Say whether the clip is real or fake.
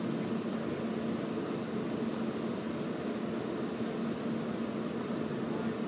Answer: real